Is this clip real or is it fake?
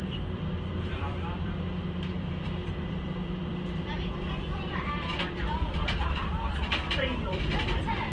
fake